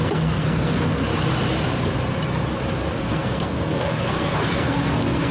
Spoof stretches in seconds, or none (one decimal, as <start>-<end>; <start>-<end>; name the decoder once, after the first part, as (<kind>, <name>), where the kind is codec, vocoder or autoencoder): 0.0-1.1 (codec, SNAC); 3.0-5.3